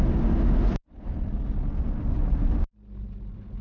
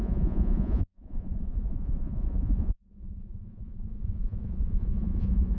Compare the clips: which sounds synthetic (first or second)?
second